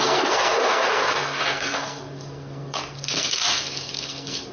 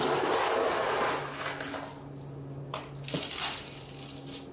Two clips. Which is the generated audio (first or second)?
first